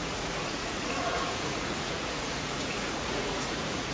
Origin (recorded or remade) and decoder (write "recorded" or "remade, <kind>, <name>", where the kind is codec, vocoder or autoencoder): remade, vocoder, Vocos